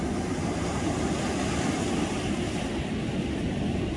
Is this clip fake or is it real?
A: real